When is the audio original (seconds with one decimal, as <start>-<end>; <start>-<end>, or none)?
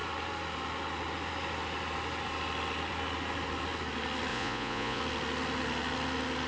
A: 0.0-4.3; 5.0-6.5